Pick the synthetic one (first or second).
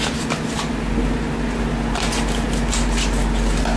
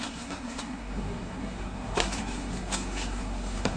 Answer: second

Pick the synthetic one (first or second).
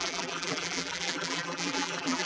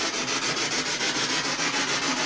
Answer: first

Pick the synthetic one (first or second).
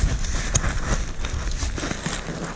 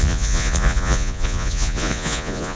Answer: second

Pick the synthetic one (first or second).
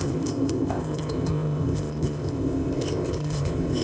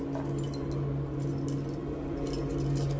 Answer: first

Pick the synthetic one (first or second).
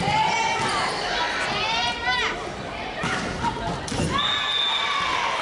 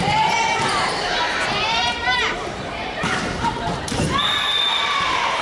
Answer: second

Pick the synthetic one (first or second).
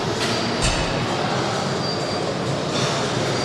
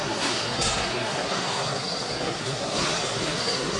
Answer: second